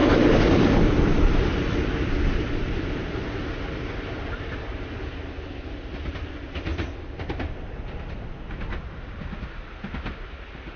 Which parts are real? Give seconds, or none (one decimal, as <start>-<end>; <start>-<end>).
0.0-10.8